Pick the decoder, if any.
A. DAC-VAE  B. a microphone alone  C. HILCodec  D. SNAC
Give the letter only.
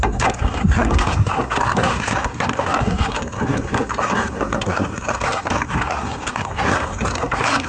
D